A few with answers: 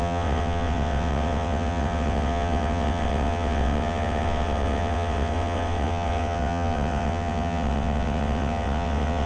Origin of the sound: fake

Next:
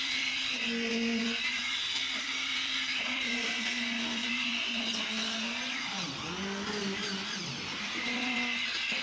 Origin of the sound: fake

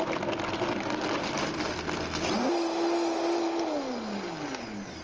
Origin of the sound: real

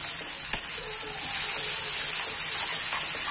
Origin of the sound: real